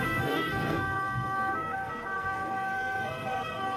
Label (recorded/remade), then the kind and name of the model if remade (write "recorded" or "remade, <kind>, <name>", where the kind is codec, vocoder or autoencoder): remade, codec, SNAC